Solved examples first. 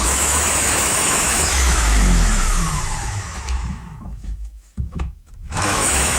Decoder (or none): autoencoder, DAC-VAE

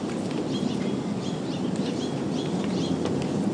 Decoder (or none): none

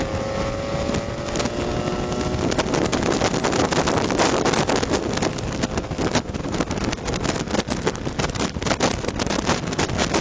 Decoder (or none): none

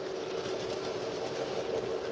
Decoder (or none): none